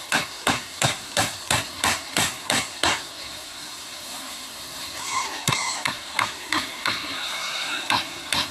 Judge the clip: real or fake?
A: fake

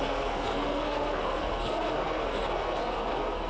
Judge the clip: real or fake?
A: fake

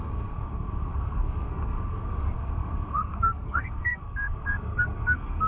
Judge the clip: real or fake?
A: fake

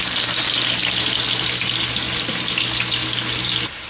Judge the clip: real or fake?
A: real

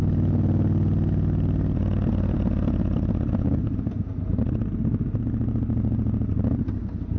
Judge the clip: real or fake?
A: real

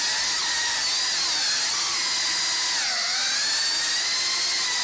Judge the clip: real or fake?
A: real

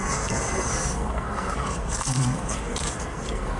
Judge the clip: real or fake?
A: fake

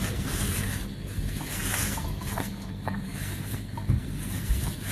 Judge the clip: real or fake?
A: fake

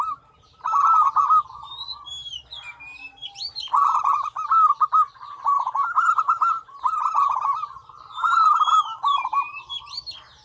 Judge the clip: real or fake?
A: real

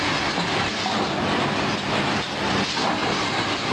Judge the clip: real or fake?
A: real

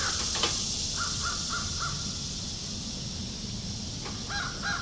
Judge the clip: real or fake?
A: real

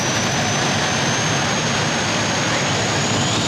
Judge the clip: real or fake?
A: real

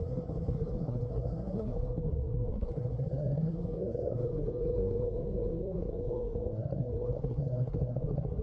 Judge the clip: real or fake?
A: fake